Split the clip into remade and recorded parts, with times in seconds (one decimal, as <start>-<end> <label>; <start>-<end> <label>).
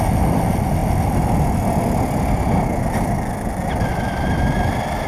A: 0.0-0.8 remade; 0.8-3.9 recorded; 3.9-5.1 remade